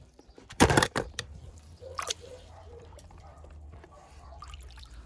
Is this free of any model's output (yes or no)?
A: no